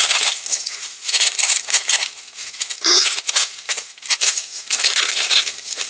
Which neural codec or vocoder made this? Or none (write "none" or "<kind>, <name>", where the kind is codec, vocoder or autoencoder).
codec, SNAC